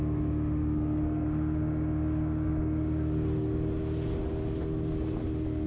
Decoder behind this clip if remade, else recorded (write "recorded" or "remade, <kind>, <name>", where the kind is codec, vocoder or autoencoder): recorded